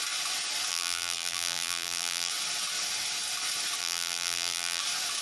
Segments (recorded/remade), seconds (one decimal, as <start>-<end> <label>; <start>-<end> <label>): 0.0-0.7 recorded; 0.7-2.3 remade; 2.3-3.8 recorded; 3.8-4.8 remade; 4.8-5.2 recorded